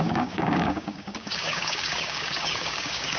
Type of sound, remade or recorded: remade